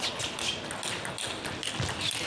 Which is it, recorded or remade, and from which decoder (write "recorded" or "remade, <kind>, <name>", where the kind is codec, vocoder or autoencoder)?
recorded